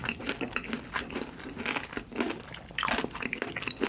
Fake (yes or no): no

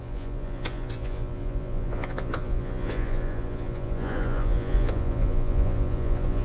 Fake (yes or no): yes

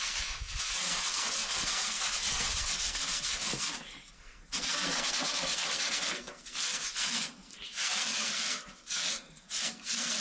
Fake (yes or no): yes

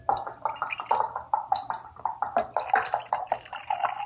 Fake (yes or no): no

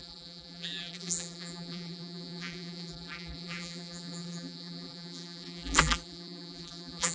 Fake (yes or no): yes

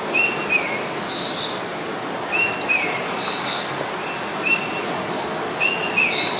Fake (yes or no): no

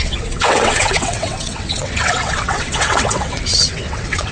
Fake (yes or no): yes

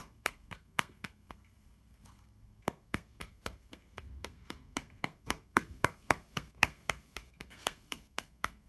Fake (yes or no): yes